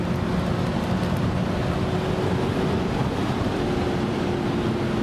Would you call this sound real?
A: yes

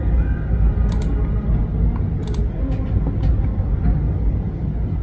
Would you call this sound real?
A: yes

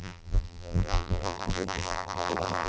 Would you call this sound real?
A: no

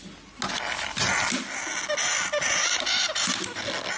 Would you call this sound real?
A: yes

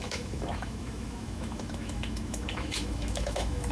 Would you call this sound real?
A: no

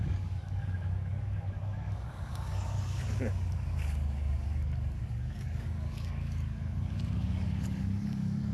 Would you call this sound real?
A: no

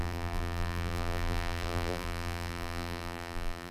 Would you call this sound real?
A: no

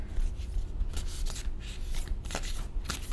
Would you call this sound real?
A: yes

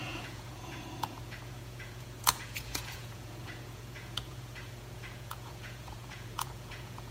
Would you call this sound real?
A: no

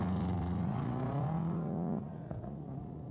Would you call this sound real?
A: no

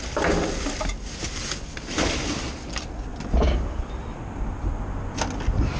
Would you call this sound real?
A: yes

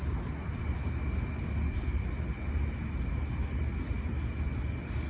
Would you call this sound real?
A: yes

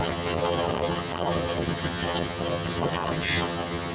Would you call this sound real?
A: no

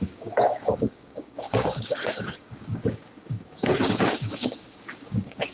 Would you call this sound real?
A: no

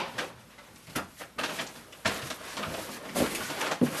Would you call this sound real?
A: yes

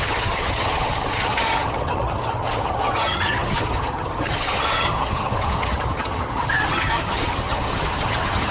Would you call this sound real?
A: no